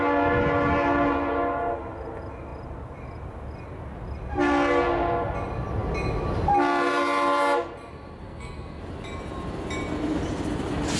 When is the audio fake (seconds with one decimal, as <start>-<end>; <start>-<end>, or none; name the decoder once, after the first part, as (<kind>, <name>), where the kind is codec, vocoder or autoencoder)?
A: 8.2-8.8 (codec, SNAC)